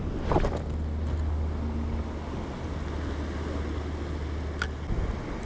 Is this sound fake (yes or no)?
no